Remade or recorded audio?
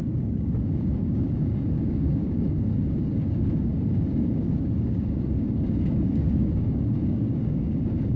remade